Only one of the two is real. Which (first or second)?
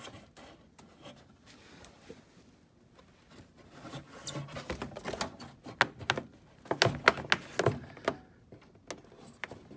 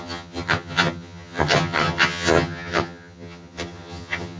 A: first